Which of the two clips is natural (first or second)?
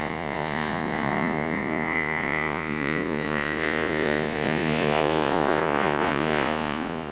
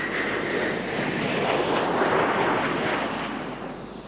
second